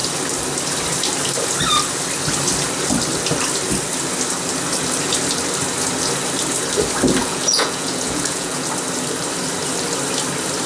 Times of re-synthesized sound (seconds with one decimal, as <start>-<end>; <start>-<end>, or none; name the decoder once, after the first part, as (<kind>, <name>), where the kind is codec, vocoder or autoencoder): 7.2-8.7 (vocoder, Vocos)